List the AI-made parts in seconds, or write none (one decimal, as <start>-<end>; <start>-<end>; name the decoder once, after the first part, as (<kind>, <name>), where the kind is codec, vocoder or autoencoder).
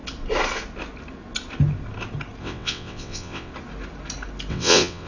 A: 2.4-3.5 (vocoder, WaveNeXt); 4.5-5.1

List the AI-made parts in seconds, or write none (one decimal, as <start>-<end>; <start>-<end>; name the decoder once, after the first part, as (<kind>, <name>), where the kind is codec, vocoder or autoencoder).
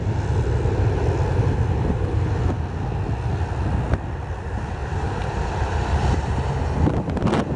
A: 4.8-6.8 (vocoder, BigVGAN v2)